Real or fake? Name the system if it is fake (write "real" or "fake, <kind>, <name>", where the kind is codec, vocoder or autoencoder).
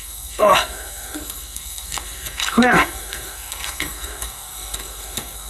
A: fake, codec, SNAC